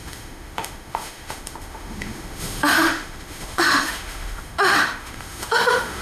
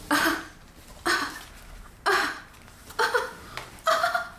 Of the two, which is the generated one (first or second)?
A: first